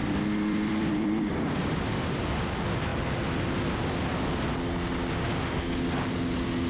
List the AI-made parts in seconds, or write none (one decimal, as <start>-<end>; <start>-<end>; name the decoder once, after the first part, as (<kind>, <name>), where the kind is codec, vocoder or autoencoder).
0.0-2.9 (vocoder, BigVGAN v2)